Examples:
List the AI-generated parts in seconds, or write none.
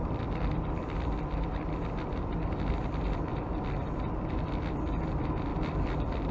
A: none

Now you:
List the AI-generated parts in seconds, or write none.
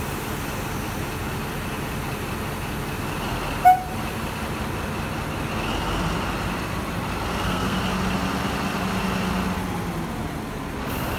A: 7.3-7.8 (codec, SNAC)